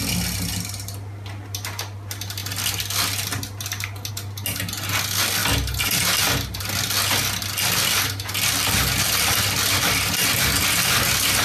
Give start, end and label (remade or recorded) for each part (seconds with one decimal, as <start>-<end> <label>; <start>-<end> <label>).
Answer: 0.0-11.4 recorded